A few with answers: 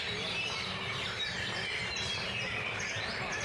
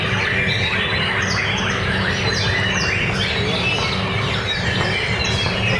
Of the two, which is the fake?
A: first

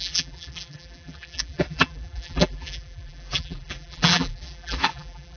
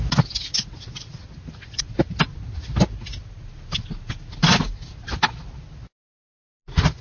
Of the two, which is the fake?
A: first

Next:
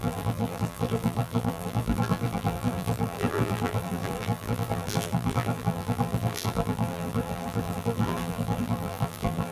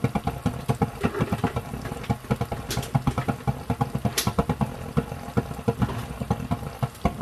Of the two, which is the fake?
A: first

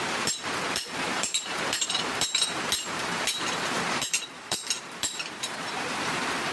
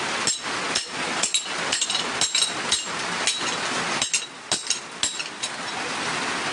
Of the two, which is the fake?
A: first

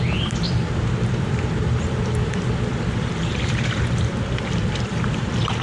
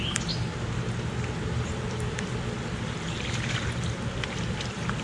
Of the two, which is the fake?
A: first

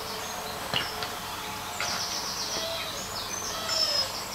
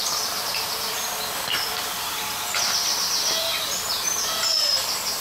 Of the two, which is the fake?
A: second